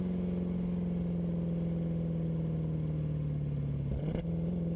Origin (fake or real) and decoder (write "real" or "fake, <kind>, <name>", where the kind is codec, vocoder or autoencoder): real